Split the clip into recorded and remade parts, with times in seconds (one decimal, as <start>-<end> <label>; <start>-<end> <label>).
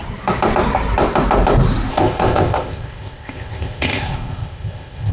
0.0-1.9 recorded; 1.9-5.1 remade